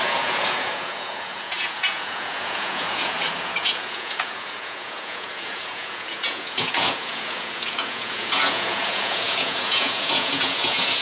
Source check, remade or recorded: remade